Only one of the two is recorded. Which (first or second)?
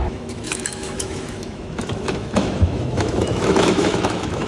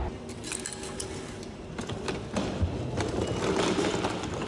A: second